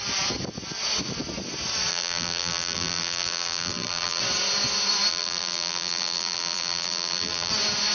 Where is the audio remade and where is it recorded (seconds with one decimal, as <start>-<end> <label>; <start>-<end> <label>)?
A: 0.0-1.9 recorded; 1.9-4.2 remade; 4.2-5.1 recorded; 5.1-7.5 remade; 7.5-7.9 recorded